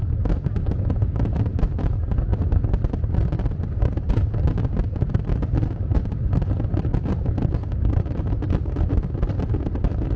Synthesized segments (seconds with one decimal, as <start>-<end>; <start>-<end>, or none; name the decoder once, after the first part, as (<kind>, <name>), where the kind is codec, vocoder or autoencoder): none